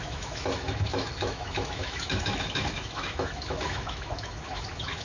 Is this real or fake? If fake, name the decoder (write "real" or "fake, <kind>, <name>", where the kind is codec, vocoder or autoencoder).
fake, autoencoder, DAC-VAE